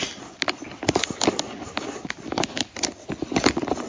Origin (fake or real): real